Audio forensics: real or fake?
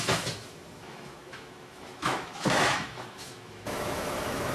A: fake